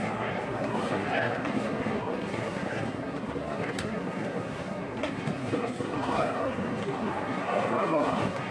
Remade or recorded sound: remade